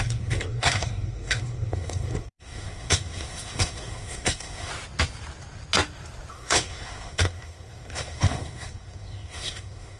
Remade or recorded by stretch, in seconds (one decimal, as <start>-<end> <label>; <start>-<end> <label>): 0.0-4.7 remade; 4.7-6.3 recorded; 6.3-10.0 remade